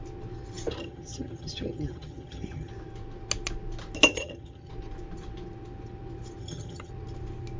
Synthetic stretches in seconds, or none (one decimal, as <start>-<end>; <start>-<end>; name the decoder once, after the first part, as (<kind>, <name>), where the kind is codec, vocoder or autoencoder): 0.7-2.7 (vocoder, HiFi-GAN); 4.1-4.7; 6.4-6.9